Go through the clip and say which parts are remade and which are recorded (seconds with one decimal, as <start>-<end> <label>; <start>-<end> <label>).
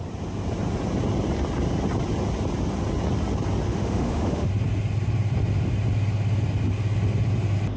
0.0-3.7 recorded; 3.7-4.5 remade; 4.5-7.8 recorded